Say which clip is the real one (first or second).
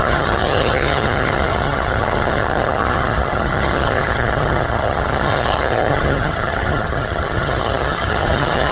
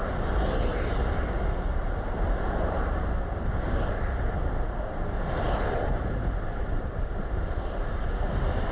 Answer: second